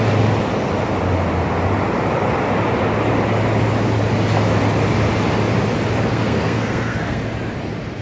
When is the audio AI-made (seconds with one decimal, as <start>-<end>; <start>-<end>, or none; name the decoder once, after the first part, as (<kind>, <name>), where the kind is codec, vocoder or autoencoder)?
6.1-7.2 (codec, SNAC)